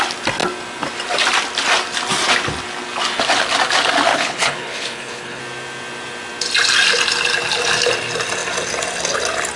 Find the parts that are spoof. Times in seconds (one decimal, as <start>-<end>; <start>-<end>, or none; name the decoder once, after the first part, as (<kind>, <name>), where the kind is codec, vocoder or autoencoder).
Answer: 4.1-5.4 (codec, HILCodec)